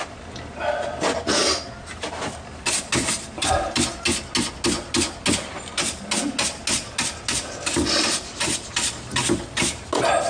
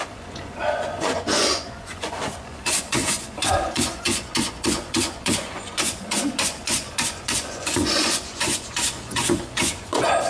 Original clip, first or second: first